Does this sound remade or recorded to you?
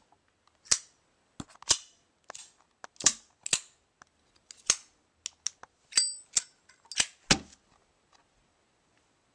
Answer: recorded